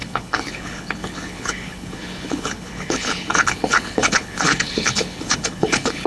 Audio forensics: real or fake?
fake